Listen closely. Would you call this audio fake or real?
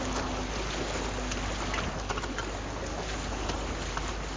real